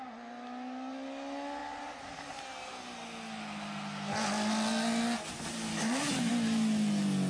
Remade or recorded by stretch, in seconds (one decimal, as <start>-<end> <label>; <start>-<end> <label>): 0.0-5.7 recorded; 5.7-6.3 remade; 6.3-7.3 recorded